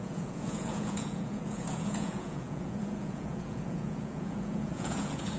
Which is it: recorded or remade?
remade